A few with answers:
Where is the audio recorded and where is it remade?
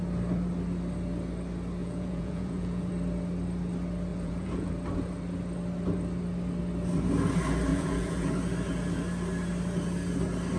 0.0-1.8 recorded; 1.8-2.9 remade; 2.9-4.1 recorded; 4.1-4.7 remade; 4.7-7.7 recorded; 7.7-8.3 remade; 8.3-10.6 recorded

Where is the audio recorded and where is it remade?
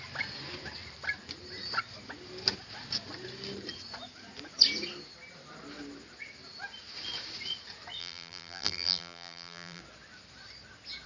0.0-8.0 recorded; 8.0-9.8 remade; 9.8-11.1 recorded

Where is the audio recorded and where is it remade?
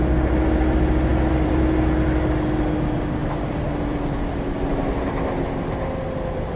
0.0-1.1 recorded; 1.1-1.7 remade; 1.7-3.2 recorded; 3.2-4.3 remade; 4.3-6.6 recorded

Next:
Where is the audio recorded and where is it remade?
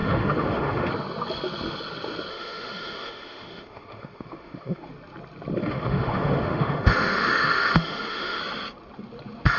0.0-0.9 remade; 0.9-2.3 recorded; 2.3-4.9 remade; 4.9-5.6 recorded; 5.6-8.4 remade; 8.4-9.6 recorded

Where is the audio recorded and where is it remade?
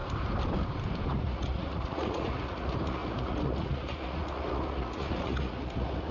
0.0-1.1 recorded; 1.1-6.1 remade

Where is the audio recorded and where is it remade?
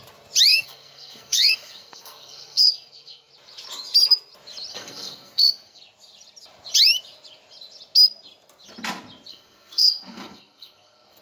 0.0-0.5 recorded; 0.5-3.3 remade; 3.3-4.7 recorded; 4.7-5.8 remade; 5.8-9.3 recorded; 9.3-11.2 remade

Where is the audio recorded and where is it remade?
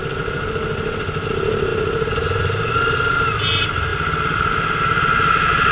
0.0-5.7 recorded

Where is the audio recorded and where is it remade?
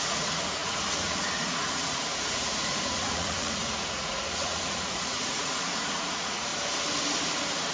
0.0-6.5 remade; 6.5-7.2 recorded; 7.2-7.7 remade